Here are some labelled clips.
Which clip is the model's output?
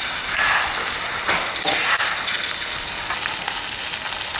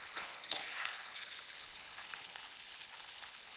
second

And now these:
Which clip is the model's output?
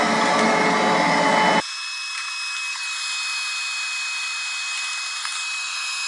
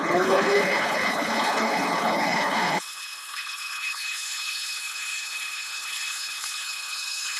second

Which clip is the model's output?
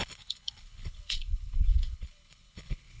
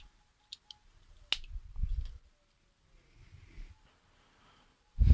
first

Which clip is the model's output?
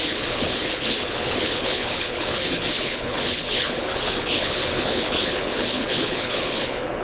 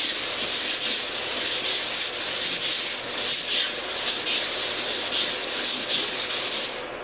first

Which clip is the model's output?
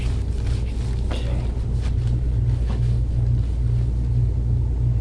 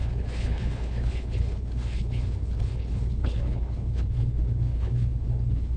second